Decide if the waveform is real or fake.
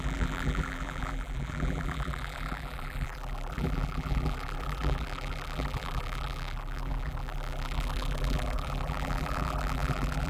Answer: fake